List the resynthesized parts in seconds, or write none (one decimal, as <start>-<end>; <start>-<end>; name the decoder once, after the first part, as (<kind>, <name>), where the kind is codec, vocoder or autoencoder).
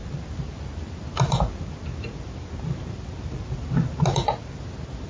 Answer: none